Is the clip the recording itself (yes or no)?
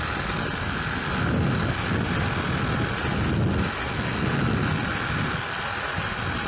yes